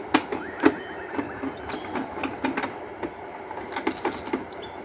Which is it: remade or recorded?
recorded